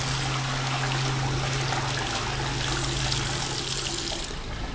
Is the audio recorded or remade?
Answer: recorded